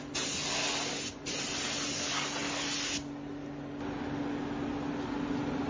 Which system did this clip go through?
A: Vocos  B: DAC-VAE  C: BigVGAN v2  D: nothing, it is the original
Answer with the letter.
D